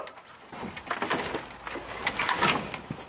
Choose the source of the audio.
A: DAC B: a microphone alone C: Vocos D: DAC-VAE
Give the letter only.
B